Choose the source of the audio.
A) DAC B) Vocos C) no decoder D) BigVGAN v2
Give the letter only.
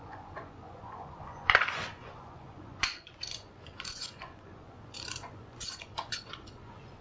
B